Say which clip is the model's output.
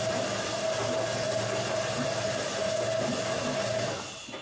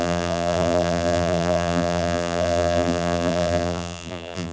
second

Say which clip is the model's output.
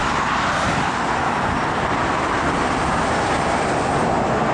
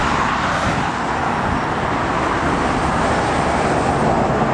first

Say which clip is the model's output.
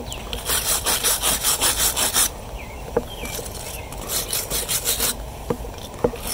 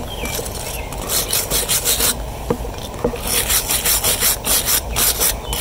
first